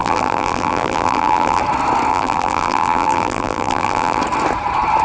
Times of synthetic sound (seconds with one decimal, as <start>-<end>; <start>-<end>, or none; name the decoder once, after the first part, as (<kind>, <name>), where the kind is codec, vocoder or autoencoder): 0.0-1.6 (vocoder, BigVGAN v2); 2.1-4.2